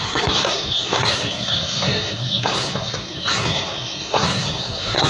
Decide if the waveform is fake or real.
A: fake